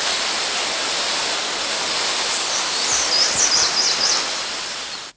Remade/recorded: recorded